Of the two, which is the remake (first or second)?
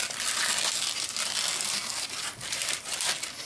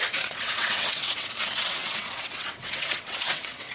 second